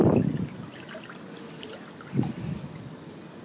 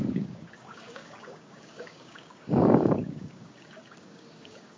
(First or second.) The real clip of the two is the first